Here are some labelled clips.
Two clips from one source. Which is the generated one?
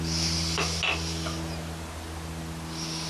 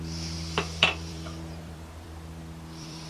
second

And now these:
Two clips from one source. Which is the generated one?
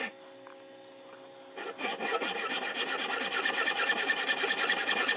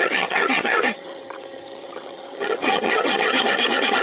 second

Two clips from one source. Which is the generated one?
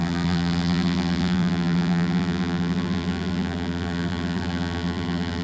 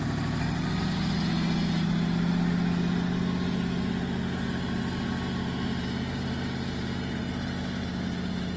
first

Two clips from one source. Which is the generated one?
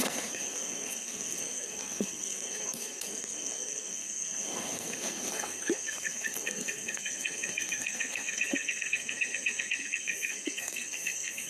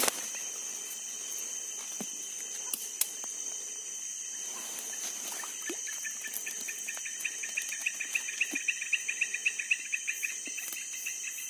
first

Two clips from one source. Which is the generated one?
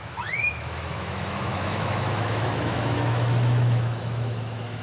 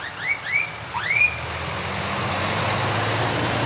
first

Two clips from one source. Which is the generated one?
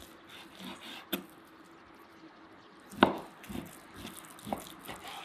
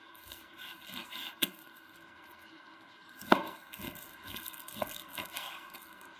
second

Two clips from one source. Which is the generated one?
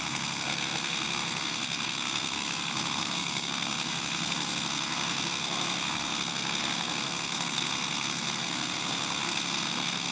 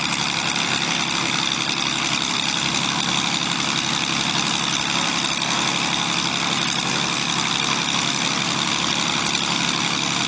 first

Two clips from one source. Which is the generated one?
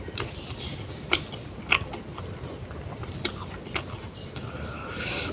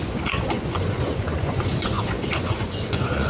second